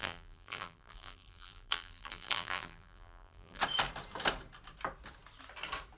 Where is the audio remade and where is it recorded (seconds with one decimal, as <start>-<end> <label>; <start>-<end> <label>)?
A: 0.0-3.6 remade; 3.6-6.0 recorded